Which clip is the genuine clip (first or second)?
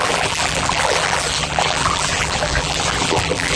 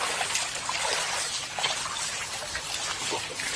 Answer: second